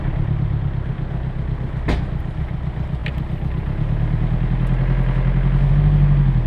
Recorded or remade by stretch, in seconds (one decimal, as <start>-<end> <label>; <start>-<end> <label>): 0.0-6.5 recorded